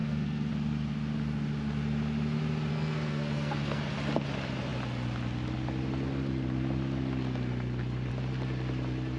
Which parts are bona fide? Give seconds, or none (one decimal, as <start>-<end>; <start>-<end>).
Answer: 0.5-2.7; 3.8-9.2